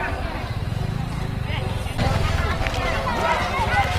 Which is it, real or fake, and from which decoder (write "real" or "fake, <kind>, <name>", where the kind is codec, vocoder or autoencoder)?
real